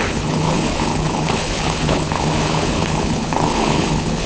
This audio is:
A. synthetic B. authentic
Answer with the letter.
A